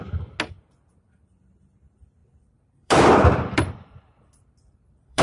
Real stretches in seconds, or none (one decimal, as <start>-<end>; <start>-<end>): 0.0-2.2